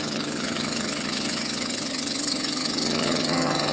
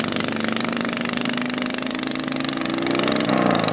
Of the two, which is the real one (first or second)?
second